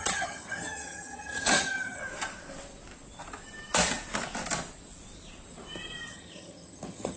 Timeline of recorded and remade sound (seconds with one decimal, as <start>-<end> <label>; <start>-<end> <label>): 0.0-2.0 remade; 2.0-6.1 recorded; 6.1-7.2 remade